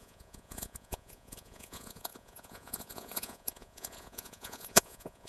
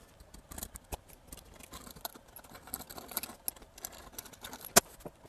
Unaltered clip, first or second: second